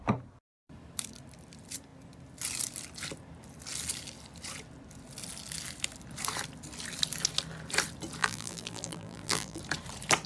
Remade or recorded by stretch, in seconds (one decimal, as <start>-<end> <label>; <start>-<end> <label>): 0.0-8.2 recorded; 8.2-9.6 remade; 9.6-10.3 recorded